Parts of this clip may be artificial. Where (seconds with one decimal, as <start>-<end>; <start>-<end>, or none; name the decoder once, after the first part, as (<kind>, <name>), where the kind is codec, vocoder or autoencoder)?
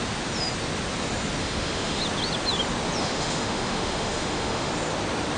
1.4-2.0 (autoencoder, DAC-VAE); 3.0-4.7